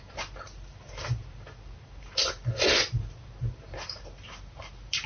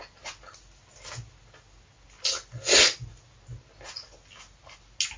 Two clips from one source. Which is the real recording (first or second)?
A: second